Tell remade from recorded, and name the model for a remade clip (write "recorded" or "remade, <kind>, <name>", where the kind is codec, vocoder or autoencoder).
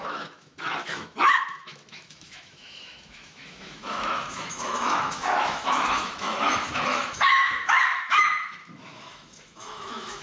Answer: remade, autoencoder, DAC-VAE